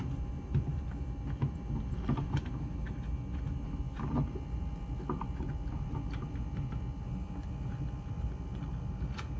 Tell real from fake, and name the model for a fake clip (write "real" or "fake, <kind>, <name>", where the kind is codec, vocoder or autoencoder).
real